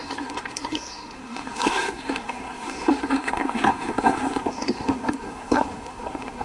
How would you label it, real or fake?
fake